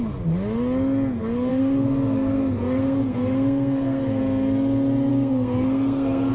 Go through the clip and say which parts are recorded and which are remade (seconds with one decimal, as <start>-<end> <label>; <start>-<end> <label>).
0.0-1.5 recorded; 1.5-4.2 remade; 4.2-5.1 recorded; 5.1-6.3 remade